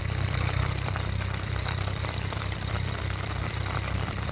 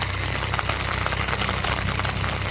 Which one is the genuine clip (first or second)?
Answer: second